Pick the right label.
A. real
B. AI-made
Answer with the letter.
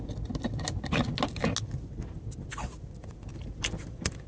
A